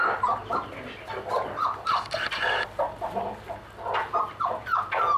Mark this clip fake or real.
real